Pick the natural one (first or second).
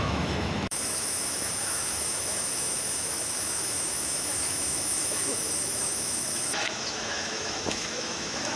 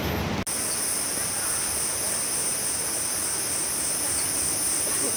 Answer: second